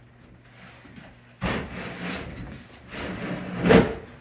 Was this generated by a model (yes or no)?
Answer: no